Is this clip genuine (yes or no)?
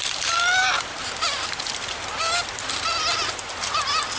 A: no